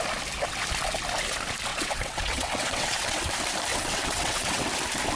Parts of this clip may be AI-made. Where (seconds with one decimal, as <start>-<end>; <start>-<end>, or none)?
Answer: 1.7-3.3; 3.7-4.7